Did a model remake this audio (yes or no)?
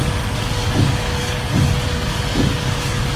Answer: yes